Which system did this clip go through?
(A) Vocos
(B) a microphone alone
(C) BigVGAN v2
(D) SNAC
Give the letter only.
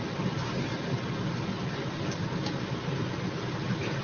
B